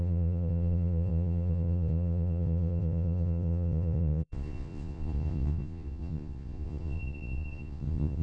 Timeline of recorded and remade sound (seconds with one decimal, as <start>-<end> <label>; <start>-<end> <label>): 0.0-8.2 remade